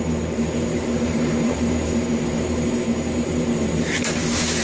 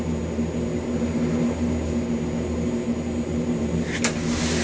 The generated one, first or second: first